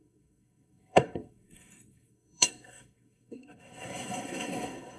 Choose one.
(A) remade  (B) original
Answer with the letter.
A